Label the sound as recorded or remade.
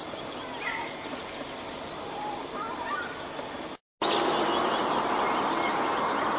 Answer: recorded